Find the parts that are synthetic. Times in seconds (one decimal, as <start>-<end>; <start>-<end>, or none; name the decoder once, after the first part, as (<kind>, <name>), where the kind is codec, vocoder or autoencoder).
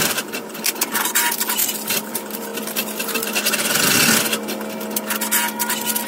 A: none